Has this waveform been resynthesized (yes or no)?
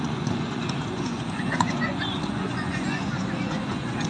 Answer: yes